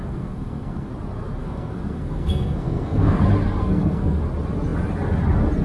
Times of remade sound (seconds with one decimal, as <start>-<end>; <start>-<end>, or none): 0.0-0.9; 1.4-3.2; 3.6-4.2